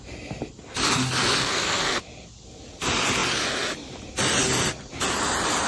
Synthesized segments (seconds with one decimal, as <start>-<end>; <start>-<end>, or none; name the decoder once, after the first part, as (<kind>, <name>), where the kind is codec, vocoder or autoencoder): 1.4-2.0 (codec, SNAC)